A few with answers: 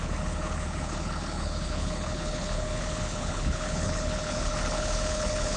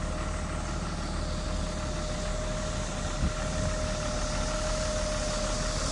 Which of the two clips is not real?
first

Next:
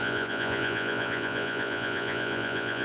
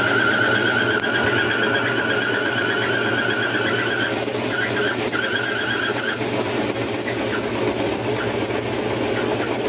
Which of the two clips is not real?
first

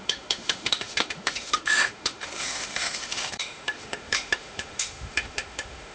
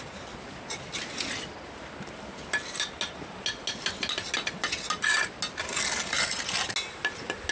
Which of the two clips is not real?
first